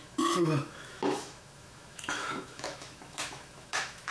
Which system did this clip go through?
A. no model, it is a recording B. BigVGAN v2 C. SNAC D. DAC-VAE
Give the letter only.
D